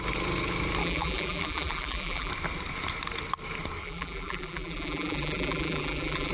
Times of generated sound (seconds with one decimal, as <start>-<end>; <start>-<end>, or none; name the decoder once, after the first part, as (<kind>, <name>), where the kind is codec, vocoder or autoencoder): 0.8-2.3 (vocoder, BigVGAN v2); 3.8-6.3